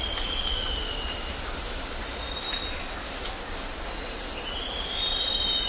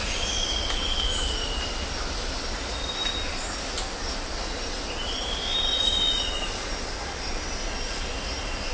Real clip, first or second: second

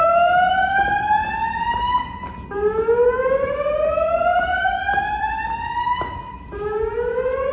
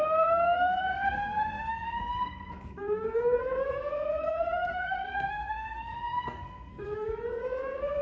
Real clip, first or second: first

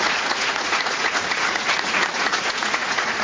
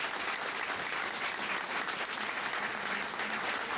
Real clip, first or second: second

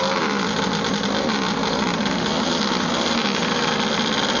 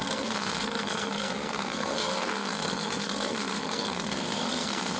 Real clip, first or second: first